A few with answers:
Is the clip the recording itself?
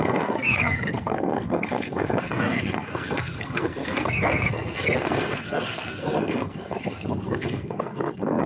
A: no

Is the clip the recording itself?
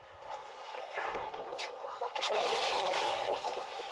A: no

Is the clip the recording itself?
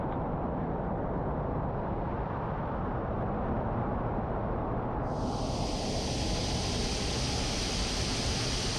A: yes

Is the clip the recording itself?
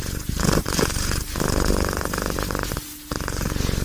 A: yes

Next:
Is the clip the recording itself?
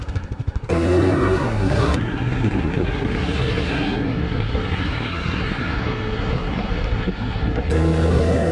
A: no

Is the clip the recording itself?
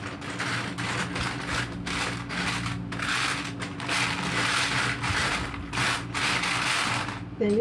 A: yes